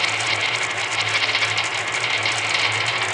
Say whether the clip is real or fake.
real